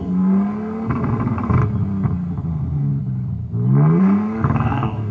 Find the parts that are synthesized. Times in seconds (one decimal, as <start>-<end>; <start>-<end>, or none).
0.0-1.6; 2.5-2.9; 4.0-5.1